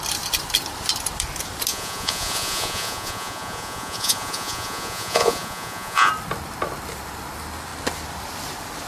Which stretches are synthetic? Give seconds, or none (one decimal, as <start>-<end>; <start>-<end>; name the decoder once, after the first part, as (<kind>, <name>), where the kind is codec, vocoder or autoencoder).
1.7-6.1 (vocoder, Vocos)